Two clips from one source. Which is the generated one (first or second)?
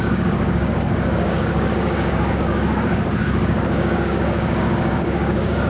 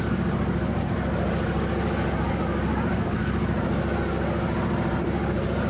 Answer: first